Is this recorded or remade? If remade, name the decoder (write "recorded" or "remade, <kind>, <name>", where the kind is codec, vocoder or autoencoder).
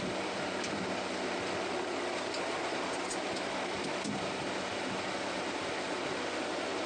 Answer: recorded